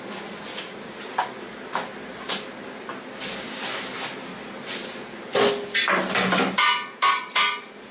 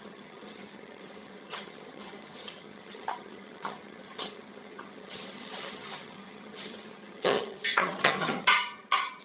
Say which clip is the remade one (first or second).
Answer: second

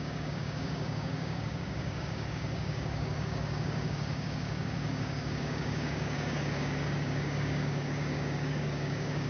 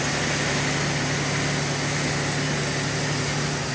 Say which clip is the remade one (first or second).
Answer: first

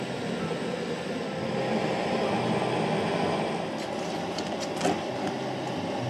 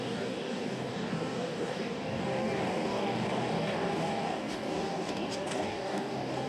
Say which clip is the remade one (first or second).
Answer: second